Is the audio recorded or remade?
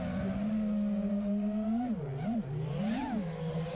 recorded